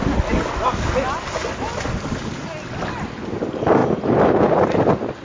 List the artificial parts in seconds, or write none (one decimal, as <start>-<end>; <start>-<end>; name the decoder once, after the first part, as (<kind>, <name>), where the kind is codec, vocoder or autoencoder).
none